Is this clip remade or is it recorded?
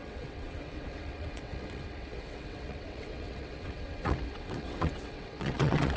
remade